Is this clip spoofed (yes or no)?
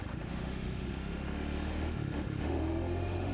yes